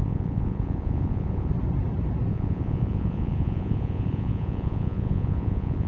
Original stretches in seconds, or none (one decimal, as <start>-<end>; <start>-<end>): 1.5-2.3